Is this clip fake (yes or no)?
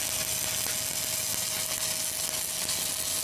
no